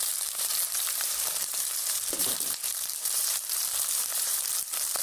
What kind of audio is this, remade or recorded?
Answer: remade